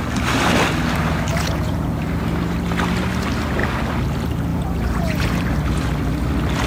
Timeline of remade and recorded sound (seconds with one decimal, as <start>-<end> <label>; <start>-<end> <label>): 0.0-1.3 recorded; 1.3-2.0 remade; 2.0-4.5 recorded; 4.5-5.4 remade; 5.4-6.7 recorded